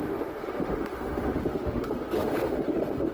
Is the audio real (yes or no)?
no